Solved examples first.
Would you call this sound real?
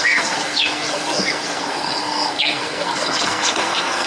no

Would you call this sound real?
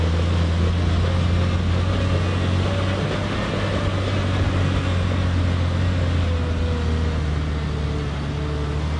yes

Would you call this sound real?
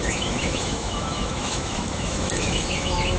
no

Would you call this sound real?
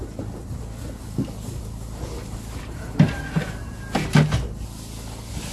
yes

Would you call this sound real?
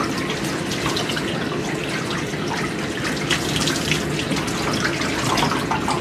yes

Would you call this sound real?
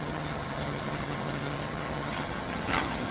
no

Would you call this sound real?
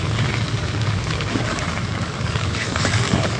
no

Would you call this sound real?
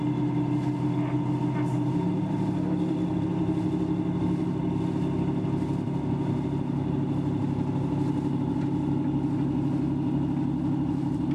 yes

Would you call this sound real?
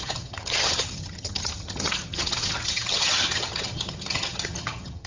no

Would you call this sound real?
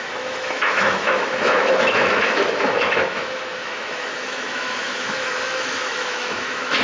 no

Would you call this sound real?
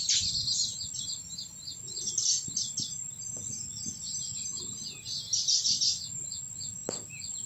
yes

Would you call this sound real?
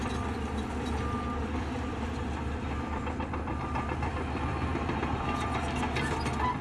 yes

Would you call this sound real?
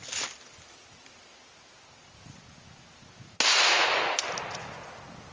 yes